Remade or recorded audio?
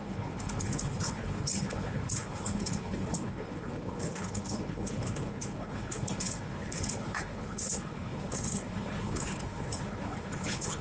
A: remade